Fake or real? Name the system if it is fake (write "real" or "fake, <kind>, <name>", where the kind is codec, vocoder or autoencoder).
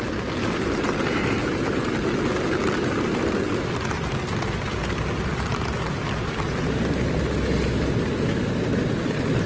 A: real